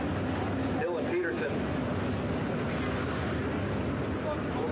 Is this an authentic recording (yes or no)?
yes